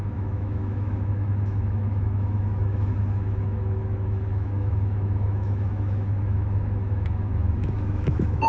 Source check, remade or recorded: remade